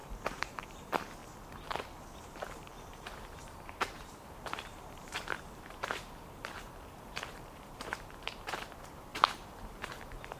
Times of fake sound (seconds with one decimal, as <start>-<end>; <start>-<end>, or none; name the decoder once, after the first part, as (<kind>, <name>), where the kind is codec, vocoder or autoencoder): 0.0-1.2 (vocoder, BigVGAN v2); 2.2-10.4